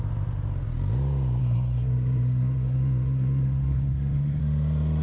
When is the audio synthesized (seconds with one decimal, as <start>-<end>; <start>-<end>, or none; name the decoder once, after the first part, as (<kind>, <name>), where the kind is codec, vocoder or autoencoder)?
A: 1.4-4.4 (codec, SNAC)